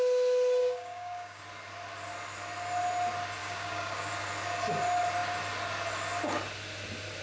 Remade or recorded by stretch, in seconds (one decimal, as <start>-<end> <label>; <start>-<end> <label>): 0.0-0.6 recorded; 0.6-1.4 remade; 1.4-3.4 recorded; 3.4-4.1 remade; 4.1-7.2 recorded